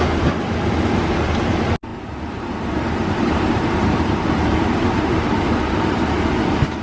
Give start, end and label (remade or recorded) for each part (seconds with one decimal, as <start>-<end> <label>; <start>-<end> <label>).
0.0-1.9 recorded; 1.9-6.0 remade; 6.0-6.8 recorded